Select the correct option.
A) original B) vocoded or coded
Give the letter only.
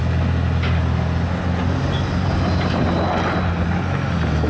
A